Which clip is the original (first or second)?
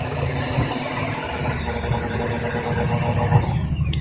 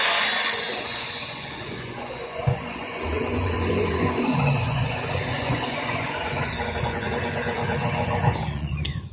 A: first